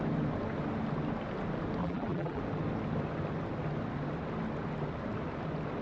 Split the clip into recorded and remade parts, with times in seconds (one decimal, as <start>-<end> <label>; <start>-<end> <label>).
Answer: 0.0-1.8 recorded; 1.8-2.4 remade; 2.4-5.8 recorded